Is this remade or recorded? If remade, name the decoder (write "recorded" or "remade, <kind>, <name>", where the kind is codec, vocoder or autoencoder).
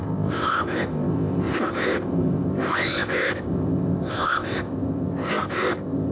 remade, codec, ZipCodec